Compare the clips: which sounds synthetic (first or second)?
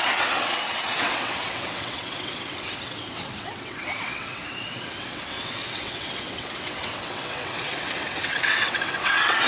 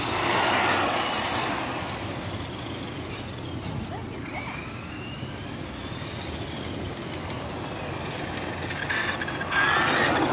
first